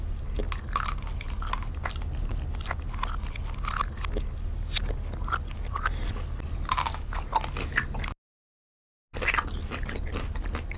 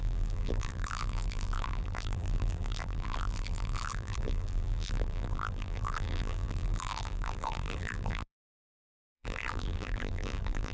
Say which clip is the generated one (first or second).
second